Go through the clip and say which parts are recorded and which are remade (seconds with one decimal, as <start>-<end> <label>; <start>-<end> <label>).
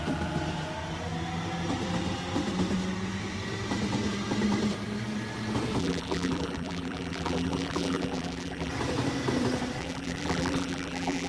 0.0-5.8 recorded; 5.8-8.7 remade; 8.7-9.8 recorded; 9.8-11.3 remade